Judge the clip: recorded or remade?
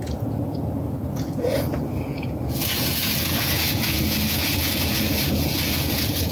remade